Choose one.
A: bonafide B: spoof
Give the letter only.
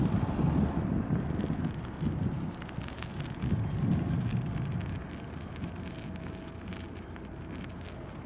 A